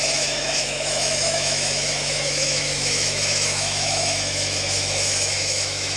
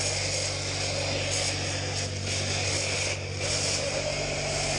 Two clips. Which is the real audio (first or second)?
second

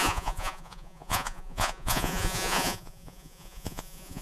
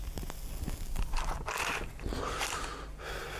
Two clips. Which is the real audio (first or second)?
second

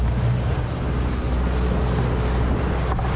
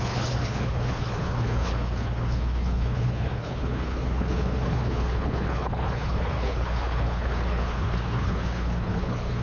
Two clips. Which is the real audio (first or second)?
first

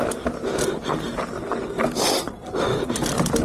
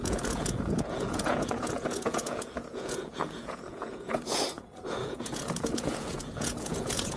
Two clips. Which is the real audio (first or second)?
first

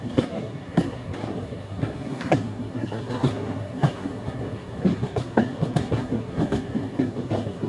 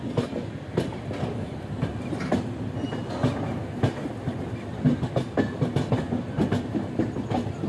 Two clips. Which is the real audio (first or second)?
second